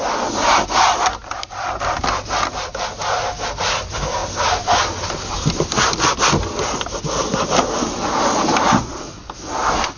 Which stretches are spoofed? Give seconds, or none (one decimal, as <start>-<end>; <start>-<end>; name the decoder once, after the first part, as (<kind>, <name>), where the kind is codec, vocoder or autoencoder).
none